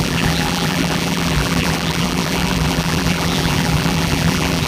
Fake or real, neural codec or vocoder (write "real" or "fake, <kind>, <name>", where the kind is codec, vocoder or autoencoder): fake, vocoder, BigVGAN v2